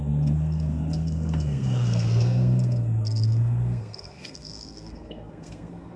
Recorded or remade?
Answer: remade